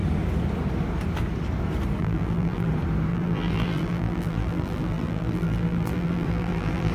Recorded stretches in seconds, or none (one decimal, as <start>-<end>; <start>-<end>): 0.0-2.0; 2.7-3.1